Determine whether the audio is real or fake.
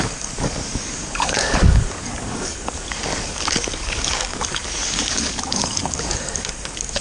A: fake